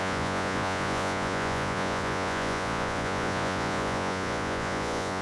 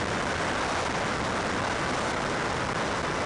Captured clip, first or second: second